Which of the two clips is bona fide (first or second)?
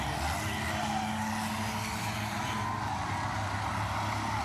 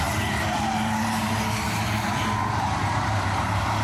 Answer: first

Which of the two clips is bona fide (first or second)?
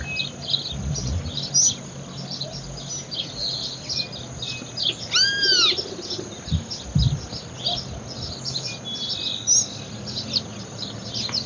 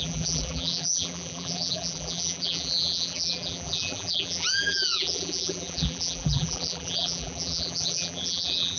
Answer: first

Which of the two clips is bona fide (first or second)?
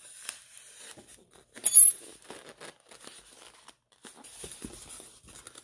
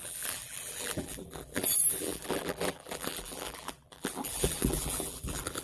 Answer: first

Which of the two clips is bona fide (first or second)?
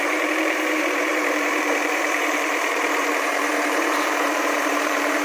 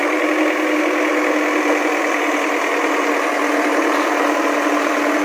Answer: second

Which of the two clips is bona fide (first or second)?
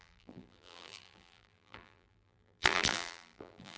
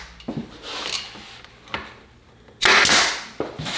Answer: second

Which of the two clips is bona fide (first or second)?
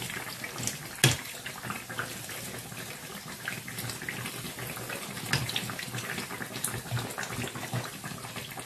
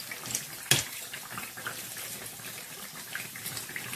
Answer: first